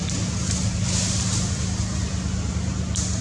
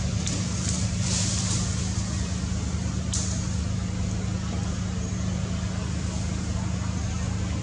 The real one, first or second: second